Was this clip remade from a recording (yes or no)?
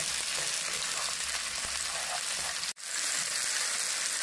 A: no